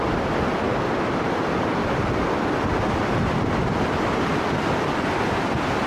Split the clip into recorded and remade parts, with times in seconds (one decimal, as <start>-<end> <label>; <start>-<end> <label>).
0.0-5.9 recorded